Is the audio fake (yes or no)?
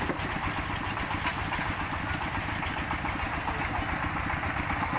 no